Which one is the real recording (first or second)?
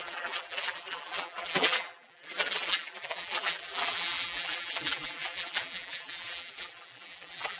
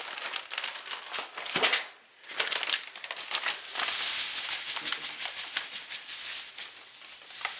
second